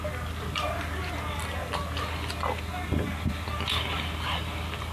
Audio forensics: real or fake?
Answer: real